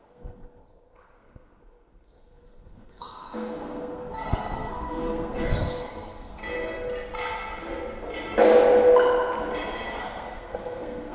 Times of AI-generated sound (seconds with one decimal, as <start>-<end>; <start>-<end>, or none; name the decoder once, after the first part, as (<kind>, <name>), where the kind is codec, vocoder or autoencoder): 0.0-6.4 (codec, SNAC); 10.0-11.1